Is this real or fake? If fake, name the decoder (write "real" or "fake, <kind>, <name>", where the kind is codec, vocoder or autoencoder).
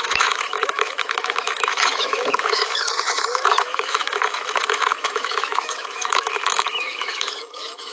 fake, autoencoder, DAC-VAE